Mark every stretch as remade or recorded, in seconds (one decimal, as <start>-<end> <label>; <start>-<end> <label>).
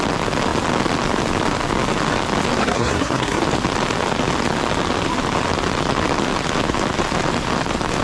0.0-2.6 recorded; 2.6-3.4 remade; 3.4-8.0 recorded